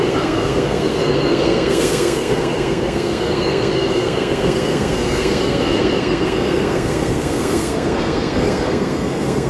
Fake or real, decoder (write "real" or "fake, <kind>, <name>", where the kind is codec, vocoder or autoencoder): fake, codec, SNAC